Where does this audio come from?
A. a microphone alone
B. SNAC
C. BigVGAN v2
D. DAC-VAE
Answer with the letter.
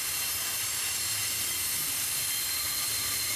A